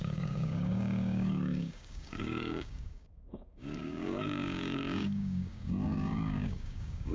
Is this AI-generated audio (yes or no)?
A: yes